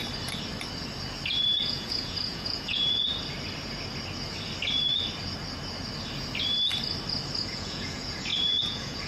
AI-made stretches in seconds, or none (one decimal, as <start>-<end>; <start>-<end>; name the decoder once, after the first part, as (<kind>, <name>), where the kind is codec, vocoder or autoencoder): 1.6-3.1 (vocoder, Vocos); 7.4-9.1